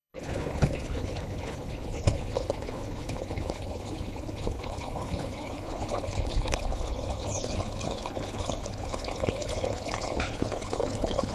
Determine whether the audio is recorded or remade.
remade